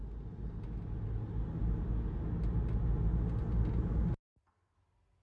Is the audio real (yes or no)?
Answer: yes